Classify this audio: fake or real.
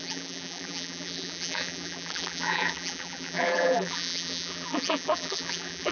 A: fake